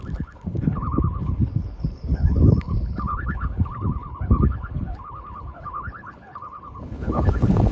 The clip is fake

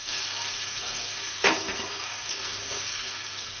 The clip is fake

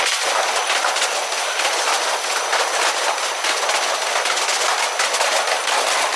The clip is real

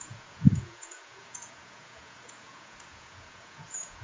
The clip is fake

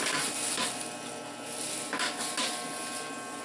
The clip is real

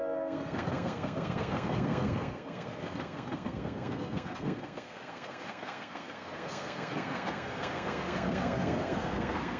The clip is fake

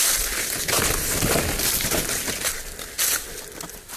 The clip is real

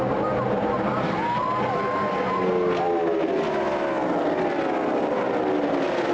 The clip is real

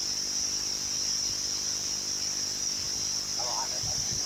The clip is real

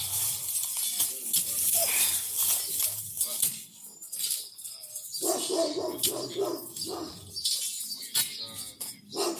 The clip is real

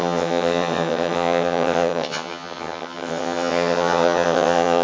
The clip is fake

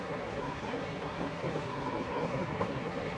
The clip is fake